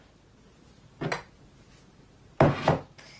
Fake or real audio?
real